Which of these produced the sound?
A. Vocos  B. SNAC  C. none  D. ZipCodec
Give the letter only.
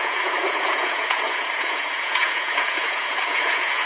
A